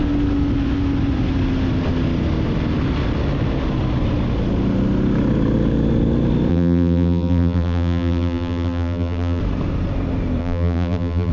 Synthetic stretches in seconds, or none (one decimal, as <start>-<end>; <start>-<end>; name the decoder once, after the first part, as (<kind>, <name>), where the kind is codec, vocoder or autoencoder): 6.5-9.4 (vocoder, BigVGAN v2); 10.4-11.3